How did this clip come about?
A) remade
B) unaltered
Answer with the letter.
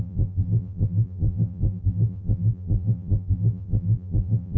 A